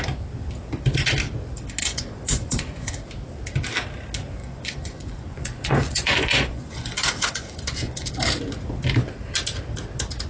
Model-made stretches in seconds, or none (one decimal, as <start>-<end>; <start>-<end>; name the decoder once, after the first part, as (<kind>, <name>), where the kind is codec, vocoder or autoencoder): 1.8-2.9 (vocoder, Vocos); 4.4-8.1